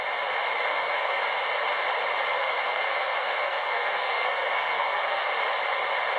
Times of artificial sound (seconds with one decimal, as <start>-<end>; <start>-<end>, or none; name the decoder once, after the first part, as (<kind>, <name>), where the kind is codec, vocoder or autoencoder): 0.7-1.2 (codec, SNAC); 2.3-5.3